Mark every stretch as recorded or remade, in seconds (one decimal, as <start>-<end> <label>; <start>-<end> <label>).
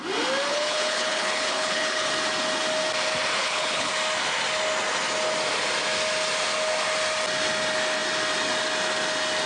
0.0-0.5 recorded; 0.5-2.1 remade; 2.1-3.4 recorded; 3.4-3.9 remade; 3.9-9.5 recorded